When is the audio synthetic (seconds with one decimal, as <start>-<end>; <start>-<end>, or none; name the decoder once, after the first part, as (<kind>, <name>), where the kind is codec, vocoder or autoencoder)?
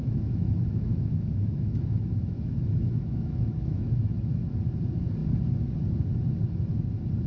0.0-4.4 (autoencoder, DAC-VAE)